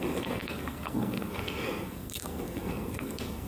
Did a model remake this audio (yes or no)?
yes